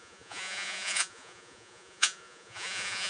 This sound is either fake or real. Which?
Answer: fake